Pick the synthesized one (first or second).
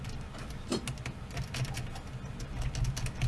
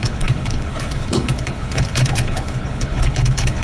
second